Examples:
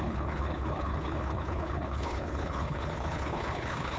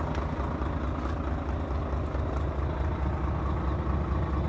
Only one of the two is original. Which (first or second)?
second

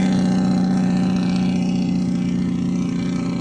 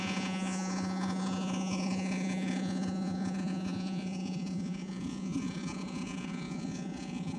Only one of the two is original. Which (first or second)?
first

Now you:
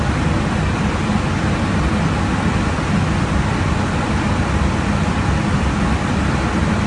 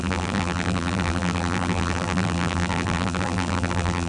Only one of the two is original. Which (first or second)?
first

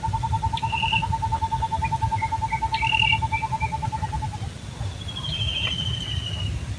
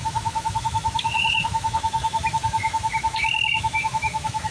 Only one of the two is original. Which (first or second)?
first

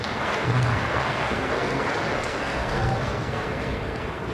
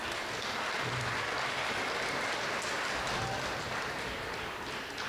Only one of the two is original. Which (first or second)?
second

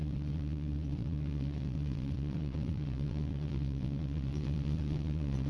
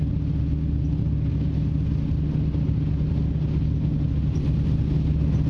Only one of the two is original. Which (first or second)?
second